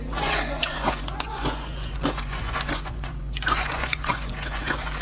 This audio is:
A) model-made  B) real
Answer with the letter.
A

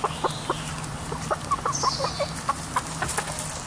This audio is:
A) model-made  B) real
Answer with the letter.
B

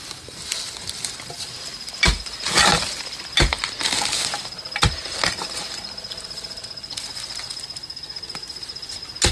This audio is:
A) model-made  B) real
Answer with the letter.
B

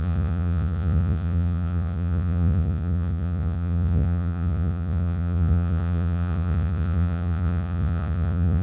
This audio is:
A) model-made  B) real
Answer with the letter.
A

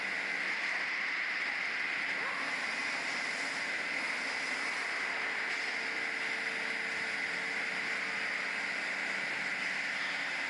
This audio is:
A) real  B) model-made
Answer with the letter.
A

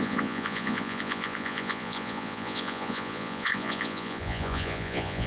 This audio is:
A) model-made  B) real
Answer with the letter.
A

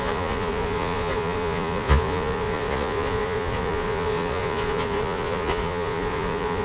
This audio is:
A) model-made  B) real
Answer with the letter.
A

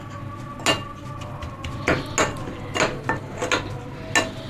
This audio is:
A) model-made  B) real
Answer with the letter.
B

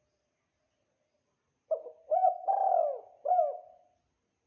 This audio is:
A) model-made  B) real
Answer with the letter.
B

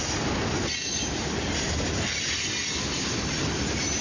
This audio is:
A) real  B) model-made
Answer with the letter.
A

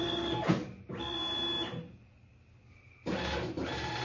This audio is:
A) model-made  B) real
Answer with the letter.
B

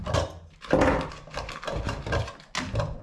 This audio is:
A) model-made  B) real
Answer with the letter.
B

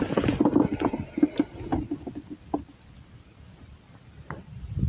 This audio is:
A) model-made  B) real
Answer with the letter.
B